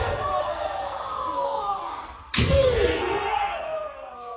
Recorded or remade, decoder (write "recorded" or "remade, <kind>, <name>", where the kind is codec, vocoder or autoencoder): remade, codec, SNAC